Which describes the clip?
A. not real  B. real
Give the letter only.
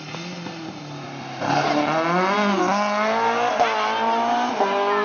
B